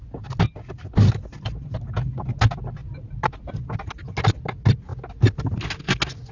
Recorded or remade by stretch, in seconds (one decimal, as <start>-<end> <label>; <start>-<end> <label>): 0.0-6.3 recorded